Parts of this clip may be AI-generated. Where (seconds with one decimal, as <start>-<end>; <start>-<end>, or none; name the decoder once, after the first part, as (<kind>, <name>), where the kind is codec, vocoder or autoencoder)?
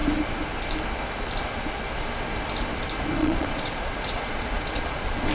3.2-5.3 (vocoder, Vocos)